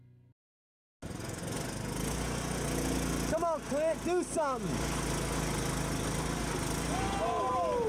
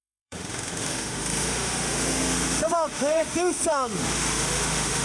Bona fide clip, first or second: first